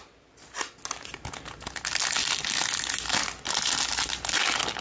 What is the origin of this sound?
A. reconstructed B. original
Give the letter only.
B